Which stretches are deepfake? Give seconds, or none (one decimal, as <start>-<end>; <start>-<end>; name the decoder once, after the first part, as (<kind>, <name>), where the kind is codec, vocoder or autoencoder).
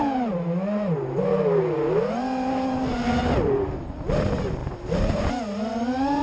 none